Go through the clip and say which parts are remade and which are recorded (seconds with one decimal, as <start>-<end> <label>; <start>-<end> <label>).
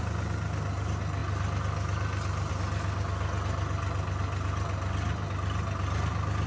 0.0-6.5 recorded